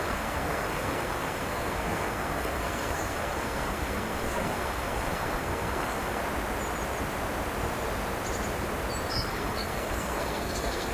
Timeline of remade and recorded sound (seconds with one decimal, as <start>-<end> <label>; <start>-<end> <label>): 0.0-6.2 remade; 6.2-9.1 recorded; 9.1-10.9 remade

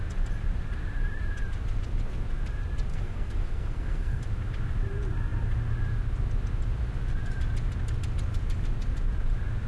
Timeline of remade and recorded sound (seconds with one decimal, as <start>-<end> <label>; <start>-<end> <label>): 0.0-2.9 recorded; 2.9-4.2 remade; 4.2-9.7 recorded

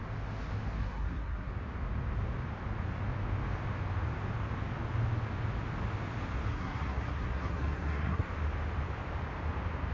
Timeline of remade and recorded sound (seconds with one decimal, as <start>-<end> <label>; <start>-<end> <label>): 0.0-0.8 recorded; 0.8-1.5 remade; 1.5-6.5 recorded; 6.5-8.3 remade; 8.3-9.9 recorded

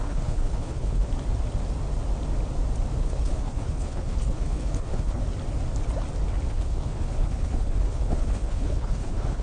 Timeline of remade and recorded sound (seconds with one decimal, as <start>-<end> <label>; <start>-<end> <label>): 0.0-1.1 remade; 1.1-3.0 recorded; 3.0-5.2 remade; 5.2-6.5 recorded; 6.5-9.4 remade

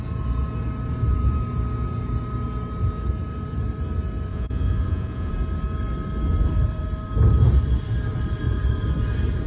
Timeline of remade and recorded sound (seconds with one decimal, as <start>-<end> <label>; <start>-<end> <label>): 0.0-4.3 recorded; 4.3-5.3 remade; 5.3-9.5 recorded

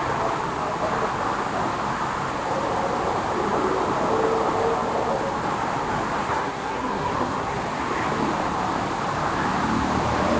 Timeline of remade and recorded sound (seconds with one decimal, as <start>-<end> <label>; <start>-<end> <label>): 0.0-6.2 recorded; 6.2-7.6 remade; 7.6-10.4 recorded

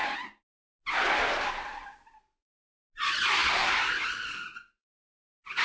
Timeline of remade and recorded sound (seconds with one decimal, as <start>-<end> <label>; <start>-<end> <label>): 0.0-5.6 recorded